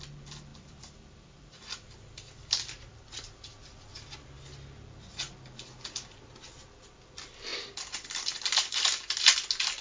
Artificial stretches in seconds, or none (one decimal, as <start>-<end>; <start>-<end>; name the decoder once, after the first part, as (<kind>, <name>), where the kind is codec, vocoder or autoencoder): 0.5-3.9 (vocoder, BigVGAN v2); 7.5-8.9

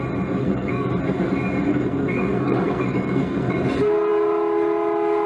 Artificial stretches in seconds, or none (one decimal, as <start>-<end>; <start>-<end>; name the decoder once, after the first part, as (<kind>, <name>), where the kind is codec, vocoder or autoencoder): 0.4-0.9 (codec, SNAC); 1.7-3.6

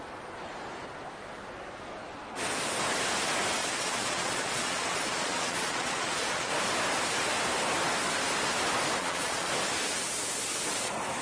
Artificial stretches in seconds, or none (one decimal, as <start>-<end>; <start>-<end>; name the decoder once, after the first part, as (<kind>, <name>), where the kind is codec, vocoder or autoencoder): 3.6-6.5 (vocoder, Vocos); 9.0-9.5

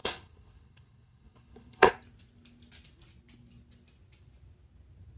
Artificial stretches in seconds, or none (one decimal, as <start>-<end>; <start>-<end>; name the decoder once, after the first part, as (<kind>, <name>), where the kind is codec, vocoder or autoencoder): 0.0-1.9 (codec, HILCodec)

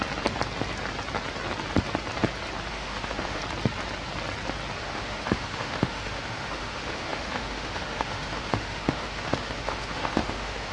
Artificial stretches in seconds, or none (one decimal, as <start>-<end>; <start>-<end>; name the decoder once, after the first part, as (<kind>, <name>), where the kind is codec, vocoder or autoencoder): 2.7-3.4 (autoencoder, DAC-VAE); 4.8-10.7

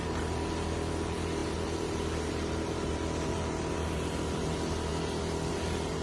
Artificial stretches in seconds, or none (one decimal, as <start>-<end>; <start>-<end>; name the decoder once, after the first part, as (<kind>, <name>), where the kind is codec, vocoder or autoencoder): 0.0-4.9 (vocoder, BigVGAN v2); 5.5-6.0

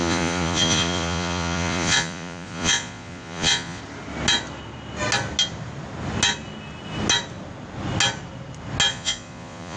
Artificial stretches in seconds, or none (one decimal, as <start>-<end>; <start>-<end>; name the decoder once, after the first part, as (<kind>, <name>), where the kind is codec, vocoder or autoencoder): 0.0-3.8 (vocoder, Vocos); 8.9-9.8